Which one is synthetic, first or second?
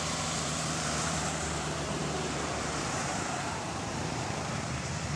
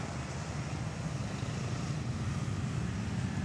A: first